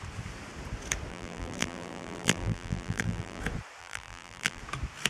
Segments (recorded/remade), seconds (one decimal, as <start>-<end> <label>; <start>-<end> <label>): 0.0-1.1 recorded; 1.1-3.4 remade; 3.4-3.8 recorded; 3.8-4.6 remade; 4.6-5.1 recorded